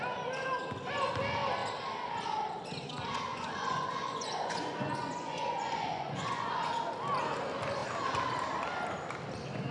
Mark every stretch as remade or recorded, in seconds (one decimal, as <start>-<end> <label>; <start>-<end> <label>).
0.0-3.3 recorded; 3.3-6.7 remade; 6.7-9.7 recorded